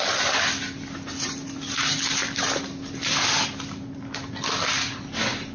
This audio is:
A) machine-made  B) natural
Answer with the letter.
B